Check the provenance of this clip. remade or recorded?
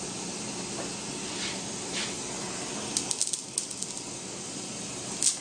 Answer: recorded